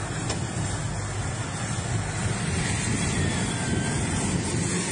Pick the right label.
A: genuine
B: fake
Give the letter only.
A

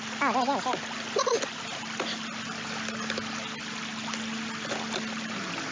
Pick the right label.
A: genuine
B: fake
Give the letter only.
A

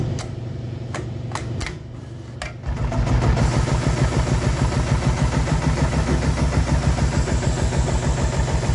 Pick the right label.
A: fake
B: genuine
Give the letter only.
B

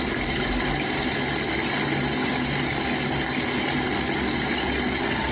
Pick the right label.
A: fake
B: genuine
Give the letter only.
B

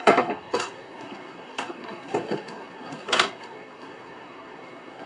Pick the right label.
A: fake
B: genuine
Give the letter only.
A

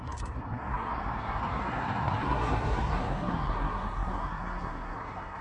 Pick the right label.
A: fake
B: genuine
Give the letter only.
A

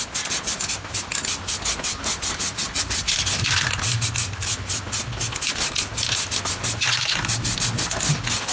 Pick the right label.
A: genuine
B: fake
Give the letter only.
A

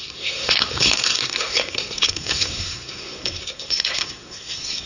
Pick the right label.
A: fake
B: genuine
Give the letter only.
A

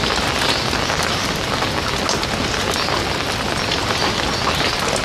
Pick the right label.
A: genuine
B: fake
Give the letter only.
A